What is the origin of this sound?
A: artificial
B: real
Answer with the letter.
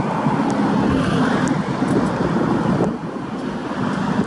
B